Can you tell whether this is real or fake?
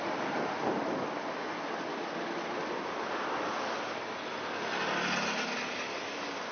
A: real